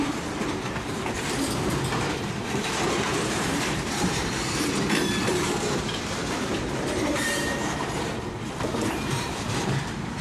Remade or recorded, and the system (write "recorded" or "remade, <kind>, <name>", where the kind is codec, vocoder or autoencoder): remade, vocoder, BigVGAN v2